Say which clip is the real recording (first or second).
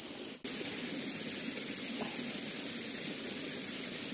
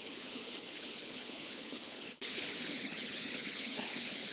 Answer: first